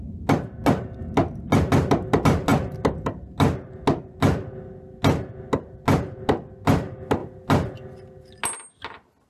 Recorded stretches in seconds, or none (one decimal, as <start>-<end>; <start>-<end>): 0.0-9.3